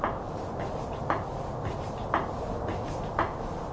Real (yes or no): yes